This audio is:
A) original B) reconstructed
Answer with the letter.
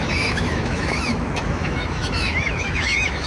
B